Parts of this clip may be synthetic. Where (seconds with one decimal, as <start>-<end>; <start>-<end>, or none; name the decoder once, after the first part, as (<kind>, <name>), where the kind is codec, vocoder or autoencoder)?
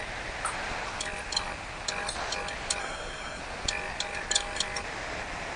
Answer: 2.8-3.4 (codec, SNAC)